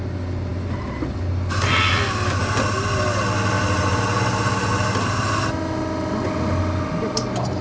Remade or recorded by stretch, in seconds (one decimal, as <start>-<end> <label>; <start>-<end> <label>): 0.0-7.6 recorded